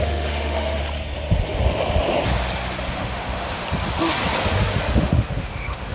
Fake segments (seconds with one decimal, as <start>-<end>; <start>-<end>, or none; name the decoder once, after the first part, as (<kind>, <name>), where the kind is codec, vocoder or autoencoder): 0.0-0.8 (autoencoder, DAC-VAE); 2.9-3.6; 4.9-5.9